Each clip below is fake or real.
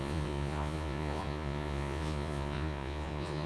fake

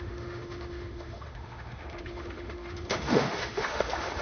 fake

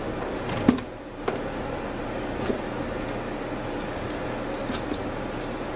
real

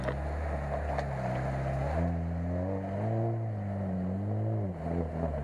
real